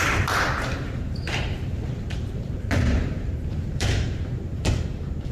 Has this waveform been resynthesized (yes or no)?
yes